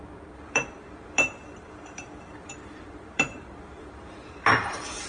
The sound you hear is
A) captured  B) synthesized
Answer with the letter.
B